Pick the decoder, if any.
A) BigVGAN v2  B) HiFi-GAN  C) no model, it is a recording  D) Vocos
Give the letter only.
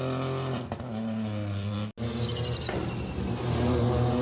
C